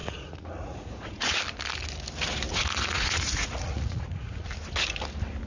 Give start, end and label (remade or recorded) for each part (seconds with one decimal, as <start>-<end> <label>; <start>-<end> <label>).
0.0-1.4 remade; 1.4-2.5 recorded; 2.5-4.4 remade; 4.4-5.5 recorded